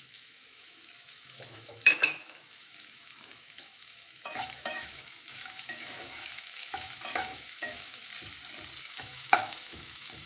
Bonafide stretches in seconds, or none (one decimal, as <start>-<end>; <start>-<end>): 8.1-8.8